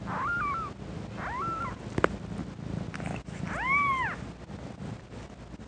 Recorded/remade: recorded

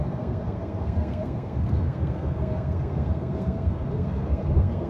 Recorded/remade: remade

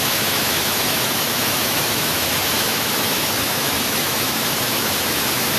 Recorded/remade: remade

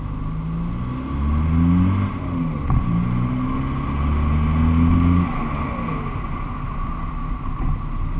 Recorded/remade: recorded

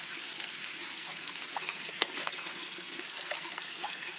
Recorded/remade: remade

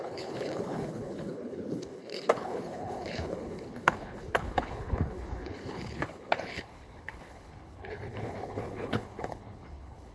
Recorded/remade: remade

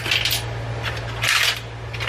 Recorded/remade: recorded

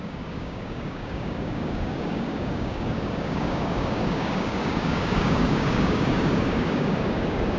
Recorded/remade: remade